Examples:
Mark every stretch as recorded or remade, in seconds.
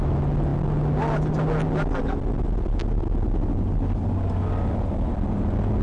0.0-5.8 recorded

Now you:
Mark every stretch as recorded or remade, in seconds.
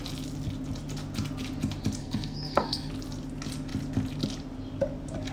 0.0-2.0 recorded; 2.0-2.9 remade; 2.9-5.3 recorded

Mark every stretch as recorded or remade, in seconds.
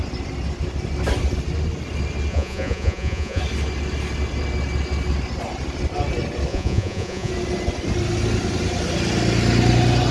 0.0-2.3 recorded; 2.3-3.4 remade; 3.4-6.5 recorded; 6.5-7.3 remade; 7.3-10.1 recorded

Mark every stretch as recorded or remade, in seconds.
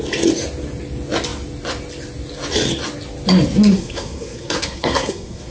0.0-3.7 recorded; 3.7-5.5 remade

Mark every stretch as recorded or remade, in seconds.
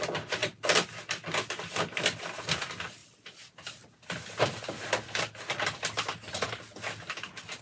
0.0-3.0 recorded; 3.0-6.4 remade; 6.4-7.6 recorded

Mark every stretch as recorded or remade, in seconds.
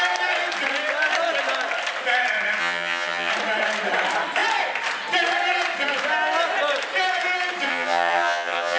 0.0-2.6 recorded; 2.6-3.3 remade; 3.3-7.7 recorded; 7.7-8.8 remade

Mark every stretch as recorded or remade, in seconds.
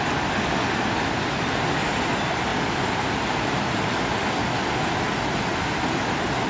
0.0-2.5 recorded; 2.5-3.8 remade; 3.8-6.5 recorded